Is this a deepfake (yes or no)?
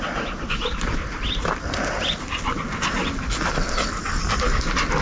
no